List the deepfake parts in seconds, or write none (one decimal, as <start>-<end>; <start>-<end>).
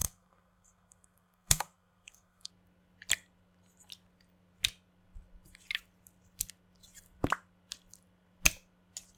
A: 0.0-2.5